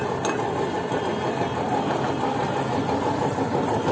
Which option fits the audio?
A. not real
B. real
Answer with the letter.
B